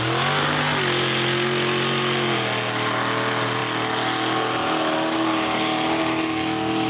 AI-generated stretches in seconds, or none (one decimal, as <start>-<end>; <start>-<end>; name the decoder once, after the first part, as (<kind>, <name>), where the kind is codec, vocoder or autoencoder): none